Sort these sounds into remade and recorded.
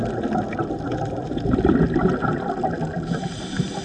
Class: recorded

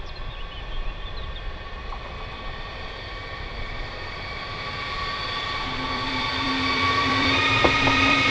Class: remade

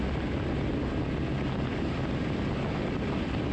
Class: recorded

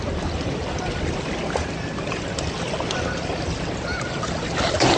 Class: recorded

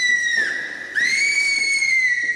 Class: remade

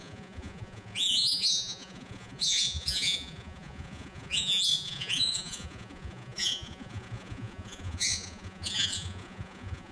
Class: remade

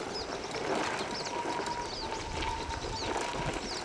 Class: recorded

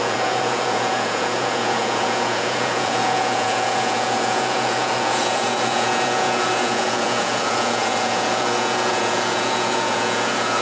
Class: remade